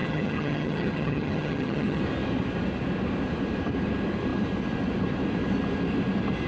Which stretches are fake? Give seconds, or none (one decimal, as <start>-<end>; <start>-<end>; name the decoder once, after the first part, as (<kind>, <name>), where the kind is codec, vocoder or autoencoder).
0.0-2.0 (vocoder, HiFi-GAN)